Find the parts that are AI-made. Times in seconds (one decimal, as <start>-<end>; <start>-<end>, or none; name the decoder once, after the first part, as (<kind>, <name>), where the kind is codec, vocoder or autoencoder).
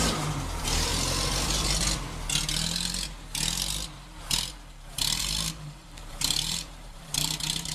0.0-0.9 (vocoder, BigVGAN v2); 5.2-7.7